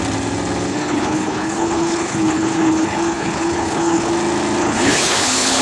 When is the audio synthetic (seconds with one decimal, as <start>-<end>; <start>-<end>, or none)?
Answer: 0.7-4.1; 4.6-5.6